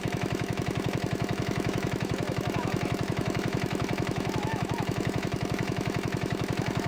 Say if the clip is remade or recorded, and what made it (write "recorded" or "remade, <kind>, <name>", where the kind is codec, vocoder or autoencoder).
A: remade, autoencoder, DAC-VAE